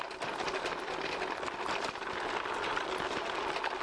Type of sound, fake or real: real